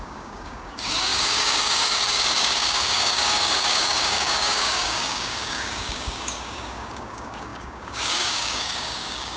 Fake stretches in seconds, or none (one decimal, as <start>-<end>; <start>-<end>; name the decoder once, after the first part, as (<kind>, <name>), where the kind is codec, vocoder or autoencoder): 0.0-9.4 (codec, DAC)